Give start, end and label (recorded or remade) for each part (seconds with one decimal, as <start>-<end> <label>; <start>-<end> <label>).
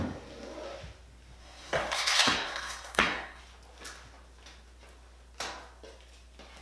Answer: 0.0-1.4 recorded; 1.4-3.4 remade; 3.4-6.6 recorded